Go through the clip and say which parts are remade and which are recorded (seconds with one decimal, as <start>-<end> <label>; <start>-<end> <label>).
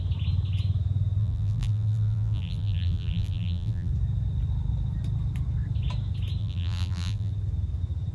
0.0-1.2 recorded; 1.2-3.9 remade; 3.9-6.4 recorded; 6.4-7.3 remade; 7.3-8.1 recorded